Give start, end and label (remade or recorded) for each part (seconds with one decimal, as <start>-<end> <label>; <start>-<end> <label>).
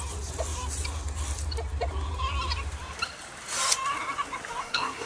0.0-4.6 recorded; 4.6-5.1 remade